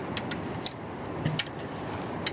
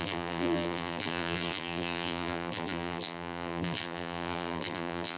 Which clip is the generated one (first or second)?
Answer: second